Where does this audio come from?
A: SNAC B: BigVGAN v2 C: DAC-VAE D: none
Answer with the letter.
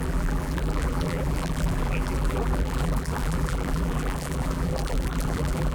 B